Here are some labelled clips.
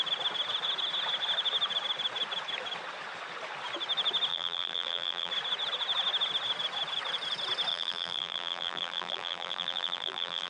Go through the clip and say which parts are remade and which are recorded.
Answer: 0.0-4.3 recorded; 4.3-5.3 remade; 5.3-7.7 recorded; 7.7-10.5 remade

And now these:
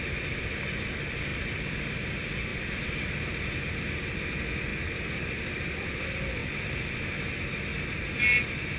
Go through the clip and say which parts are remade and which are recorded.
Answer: 0.0-1.3 recorded; 1.3-1.9 remade; 1.9-2.5 recorded; 2.5-3.2 remade; 3.2-4.7 recorded; 4.7-5.4 remade; 5.4-6.4 recorded; 6.4-7.1 remade; 7.1-8.8 recorded